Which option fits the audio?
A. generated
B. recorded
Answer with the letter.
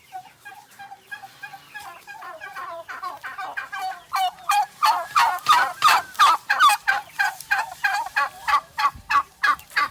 A